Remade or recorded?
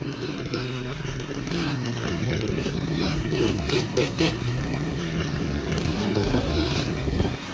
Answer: remade